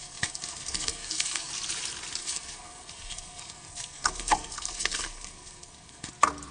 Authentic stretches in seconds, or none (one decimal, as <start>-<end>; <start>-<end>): 1.5-2.2; 6.1-6.5